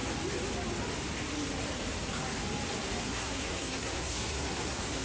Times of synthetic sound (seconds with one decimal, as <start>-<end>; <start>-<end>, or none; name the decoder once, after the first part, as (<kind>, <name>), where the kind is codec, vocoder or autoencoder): 3.0-5.0 (codec, SNAC)